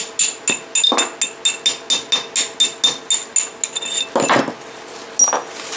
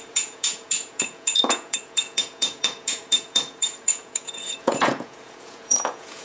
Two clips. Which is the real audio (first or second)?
first